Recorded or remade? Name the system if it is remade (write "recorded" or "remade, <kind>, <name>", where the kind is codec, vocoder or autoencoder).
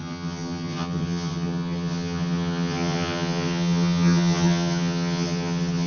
remade, vocoder, HiFi-GAN